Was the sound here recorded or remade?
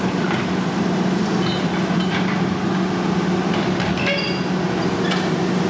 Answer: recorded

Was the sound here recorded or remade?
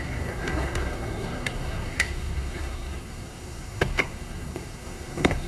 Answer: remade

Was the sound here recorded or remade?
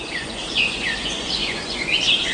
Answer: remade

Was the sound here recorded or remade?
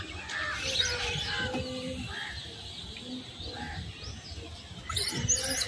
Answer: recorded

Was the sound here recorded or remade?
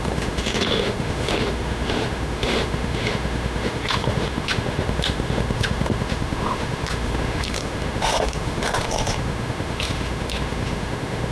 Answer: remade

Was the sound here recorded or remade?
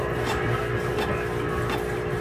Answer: recorded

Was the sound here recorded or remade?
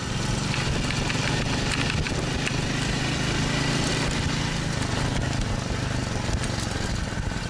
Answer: recorded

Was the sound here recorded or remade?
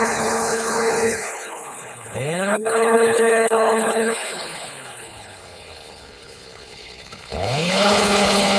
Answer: remade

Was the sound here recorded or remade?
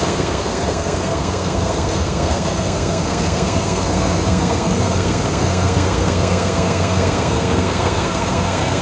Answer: remade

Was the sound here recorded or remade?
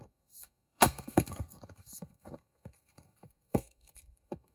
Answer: remade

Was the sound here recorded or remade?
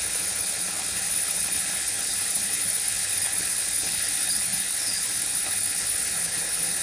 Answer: remade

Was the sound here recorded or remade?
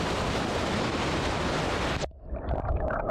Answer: remade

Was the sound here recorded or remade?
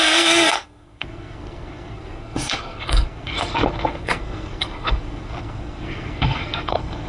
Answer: remade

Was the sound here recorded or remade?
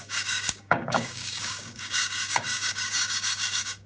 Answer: remade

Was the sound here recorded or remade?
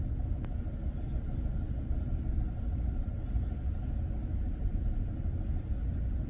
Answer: recorded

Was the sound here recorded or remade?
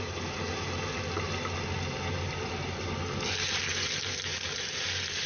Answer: recorded